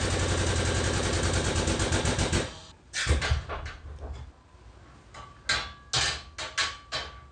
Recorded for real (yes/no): yes